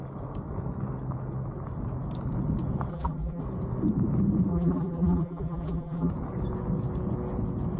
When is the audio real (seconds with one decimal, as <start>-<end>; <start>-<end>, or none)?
0.0-2.9; 3.4-4.5; 6.1-7.8